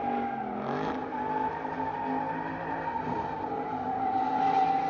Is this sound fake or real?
fake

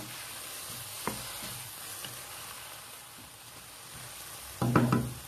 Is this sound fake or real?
real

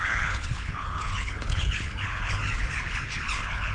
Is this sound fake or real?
fake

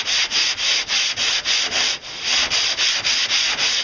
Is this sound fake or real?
real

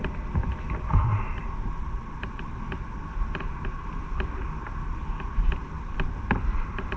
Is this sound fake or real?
real